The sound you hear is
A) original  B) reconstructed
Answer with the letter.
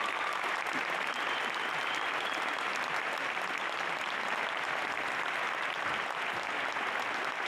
A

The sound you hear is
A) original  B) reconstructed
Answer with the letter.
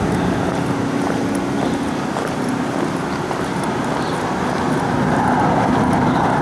A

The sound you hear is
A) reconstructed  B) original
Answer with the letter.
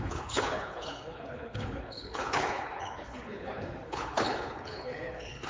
A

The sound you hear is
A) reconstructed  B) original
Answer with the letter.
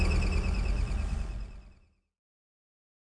B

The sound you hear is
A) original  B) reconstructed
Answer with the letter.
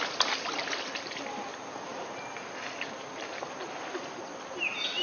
A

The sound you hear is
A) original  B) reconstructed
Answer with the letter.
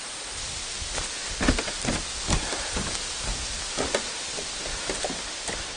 A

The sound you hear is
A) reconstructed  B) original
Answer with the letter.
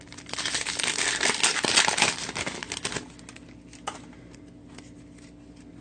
B